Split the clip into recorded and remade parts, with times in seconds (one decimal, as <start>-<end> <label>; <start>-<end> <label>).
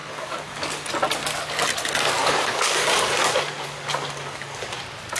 0.0-0.9 remade; 0.9-2.2 recorded; 2.2-4.8 remade; 4.8-5.2 recorded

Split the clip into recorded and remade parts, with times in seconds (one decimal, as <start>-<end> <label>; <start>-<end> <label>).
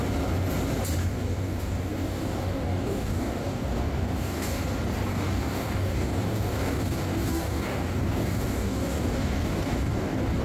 0.0-1.0 recorded; 1.0-4.6 remade; 4.6-5.1 recorded; 5.1-10.4 remade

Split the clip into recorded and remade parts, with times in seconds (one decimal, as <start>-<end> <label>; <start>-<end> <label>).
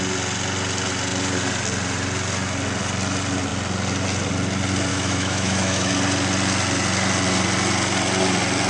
0.0-4.9 recorded; 4.9-5.9 remade; 5.9-8.7 recorded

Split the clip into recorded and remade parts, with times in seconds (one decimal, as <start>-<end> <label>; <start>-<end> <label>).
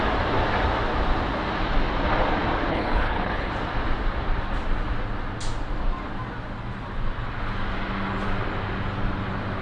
0.0-2.7 recorded; 2.7-3.5 remade; 3.5-9.6 recorded